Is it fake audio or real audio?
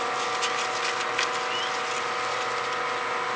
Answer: real